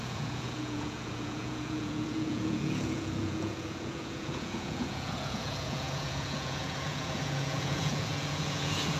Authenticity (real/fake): fake